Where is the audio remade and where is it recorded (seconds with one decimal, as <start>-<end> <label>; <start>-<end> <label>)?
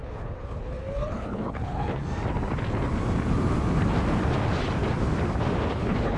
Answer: 0.0-2.0 remade; 2.0-5.7 recorded; 5.7-6.2 remade